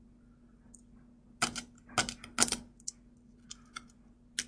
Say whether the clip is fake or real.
real